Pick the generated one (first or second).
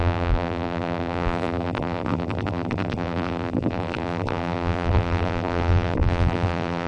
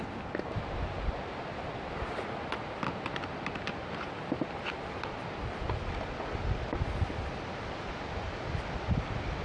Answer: first